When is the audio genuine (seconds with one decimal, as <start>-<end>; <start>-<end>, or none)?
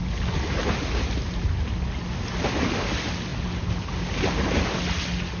0.0-5.4